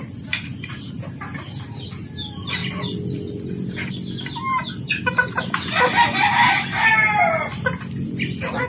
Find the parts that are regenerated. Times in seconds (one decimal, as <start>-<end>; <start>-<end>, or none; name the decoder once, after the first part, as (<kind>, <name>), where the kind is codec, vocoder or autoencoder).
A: none